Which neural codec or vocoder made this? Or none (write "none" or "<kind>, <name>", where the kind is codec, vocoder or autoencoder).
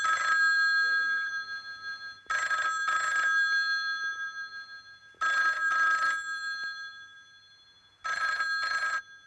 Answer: none